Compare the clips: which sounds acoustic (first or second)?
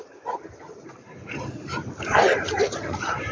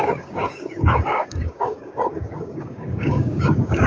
first